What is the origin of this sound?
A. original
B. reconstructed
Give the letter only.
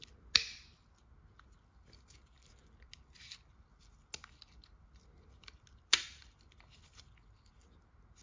A